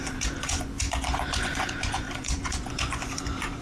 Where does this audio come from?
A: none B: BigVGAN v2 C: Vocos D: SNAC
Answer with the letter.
C